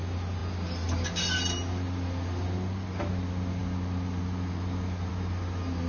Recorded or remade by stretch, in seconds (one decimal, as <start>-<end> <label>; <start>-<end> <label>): 0.0-5.9 recorded